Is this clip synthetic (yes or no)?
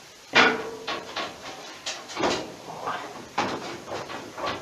yes